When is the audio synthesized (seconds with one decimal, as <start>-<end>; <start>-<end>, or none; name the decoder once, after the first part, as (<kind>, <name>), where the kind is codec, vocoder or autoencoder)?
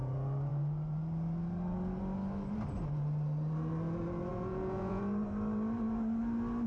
4.3-5.0 (vocoder, Vocos)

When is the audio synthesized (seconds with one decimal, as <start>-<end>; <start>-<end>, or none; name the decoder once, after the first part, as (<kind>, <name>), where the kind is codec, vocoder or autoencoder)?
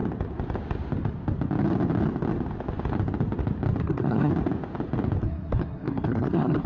3.8-4.3 (codec, SNAC); 5.2-6.7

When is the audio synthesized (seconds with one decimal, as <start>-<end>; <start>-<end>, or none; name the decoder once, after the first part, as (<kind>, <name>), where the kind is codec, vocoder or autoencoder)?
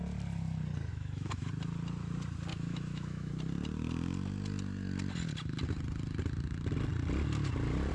0.9-1.5 (autoencoder, DAC-VAE); 2.5-3.3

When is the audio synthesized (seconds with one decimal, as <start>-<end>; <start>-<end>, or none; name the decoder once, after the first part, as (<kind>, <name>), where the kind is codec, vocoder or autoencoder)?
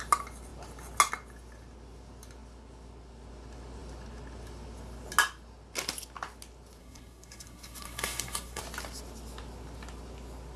6.8-8.6 (codec, SNAC)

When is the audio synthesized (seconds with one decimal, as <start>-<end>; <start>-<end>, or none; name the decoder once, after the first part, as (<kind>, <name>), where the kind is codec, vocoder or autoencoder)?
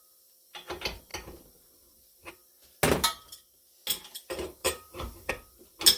4.6-5.3 (vocoder, BigVGAN v2)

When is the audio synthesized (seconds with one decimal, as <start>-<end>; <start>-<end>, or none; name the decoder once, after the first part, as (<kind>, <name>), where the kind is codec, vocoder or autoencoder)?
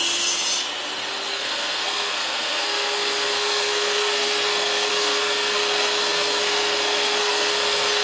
1.3-8.0 (codec, SNAC)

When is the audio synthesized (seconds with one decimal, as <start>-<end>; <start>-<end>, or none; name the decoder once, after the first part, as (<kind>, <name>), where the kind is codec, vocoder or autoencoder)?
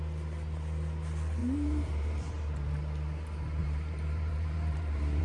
1.4-2.3 (vocoder, BigVGAN v2); 3.6-5.2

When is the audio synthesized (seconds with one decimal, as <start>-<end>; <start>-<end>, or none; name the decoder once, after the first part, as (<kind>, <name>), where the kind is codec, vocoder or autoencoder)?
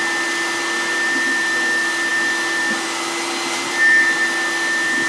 none